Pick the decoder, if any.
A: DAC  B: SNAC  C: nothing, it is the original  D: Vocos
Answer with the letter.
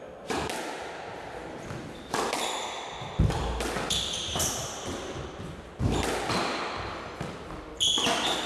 C